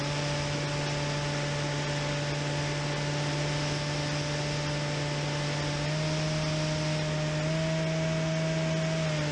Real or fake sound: real